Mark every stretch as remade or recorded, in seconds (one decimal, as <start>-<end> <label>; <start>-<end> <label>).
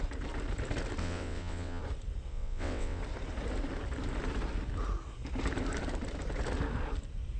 0.0-1.0 recorded; 1.0-1.8 remade; 1.8-2.3 recorded; 2.3-3.0 remade; 3.0-7.4 recorded